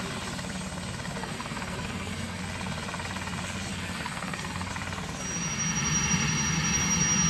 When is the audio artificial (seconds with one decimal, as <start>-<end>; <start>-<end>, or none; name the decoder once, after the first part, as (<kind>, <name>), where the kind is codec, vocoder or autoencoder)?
1.2-2.4 (codec, SNAC); 3.7-4.7